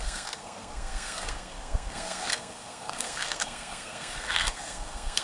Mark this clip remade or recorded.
remade